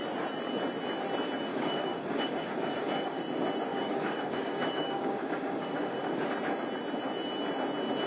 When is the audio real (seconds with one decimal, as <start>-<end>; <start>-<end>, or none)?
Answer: 0.0-1.5; 3.2-3.7; 6.2-8.1